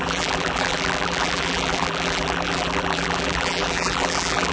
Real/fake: fake